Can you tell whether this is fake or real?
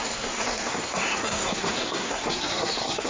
fake